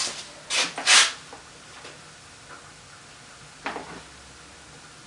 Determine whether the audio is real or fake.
real